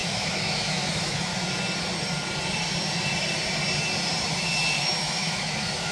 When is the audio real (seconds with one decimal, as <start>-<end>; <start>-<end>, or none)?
1.3-4.8